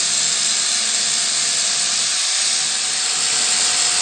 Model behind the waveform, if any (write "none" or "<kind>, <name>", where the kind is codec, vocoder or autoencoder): none